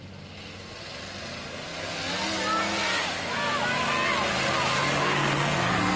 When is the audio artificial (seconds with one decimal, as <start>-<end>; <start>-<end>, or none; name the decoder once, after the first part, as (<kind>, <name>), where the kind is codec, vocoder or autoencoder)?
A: 5.0-6.0 (codec, SNAC)